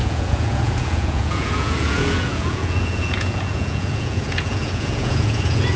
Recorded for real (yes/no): no